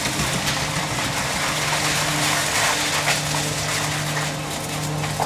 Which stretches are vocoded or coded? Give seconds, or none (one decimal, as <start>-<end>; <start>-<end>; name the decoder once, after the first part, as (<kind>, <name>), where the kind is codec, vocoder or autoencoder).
none